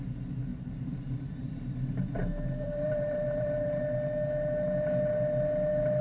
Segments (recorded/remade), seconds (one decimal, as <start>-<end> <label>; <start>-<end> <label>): 0.0-0.5 recorded; 0.5-3.8 remade; 3.8-6.0 recorded